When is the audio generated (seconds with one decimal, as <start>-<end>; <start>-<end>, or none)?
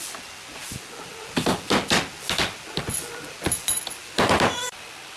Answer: none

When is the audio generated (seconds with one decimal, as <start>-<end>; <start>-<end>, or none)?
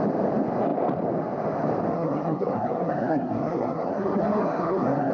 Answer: 1.9-5.1